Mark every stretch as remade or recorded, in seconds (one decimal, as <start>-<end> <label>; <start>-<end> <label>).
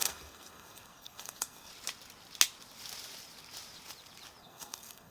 0.0-1.7 remade; 1.7-4.4 recorded; 4.4-5.1 remade